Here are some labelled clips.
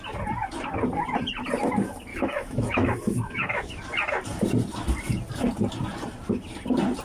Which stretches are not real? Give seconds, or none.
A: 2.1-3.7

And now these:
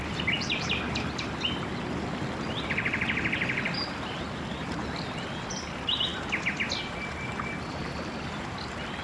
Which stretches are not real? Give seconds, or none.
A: none

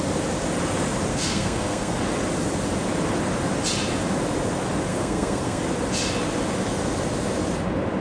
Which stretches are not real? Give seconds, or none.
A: 1.1-1.9; 4.9-5.6

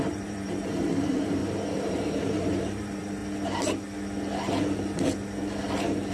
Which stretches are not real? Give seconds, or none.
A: 0.0-3.2

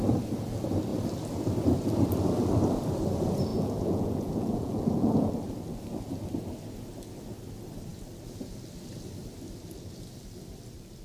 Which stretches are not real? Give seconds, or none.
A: 3.5-5.3

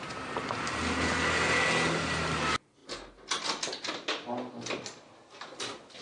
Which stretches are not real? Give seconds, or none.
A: none